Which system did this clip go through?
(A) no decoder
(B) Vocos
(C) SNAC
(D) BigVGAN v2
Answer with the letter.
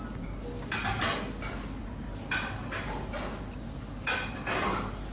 A